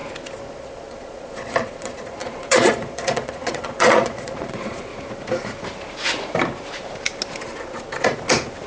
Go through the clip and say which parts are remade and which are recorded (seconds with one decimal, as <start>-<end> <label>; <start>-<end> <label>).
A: 0.0-0.5 recorded; 0.5-4.9 remade; 4.9-8.7 recorded